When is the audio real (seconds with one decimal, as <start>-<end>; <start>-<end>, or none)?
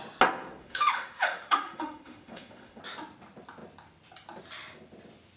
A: 0.0-0.6; 2.8-5.4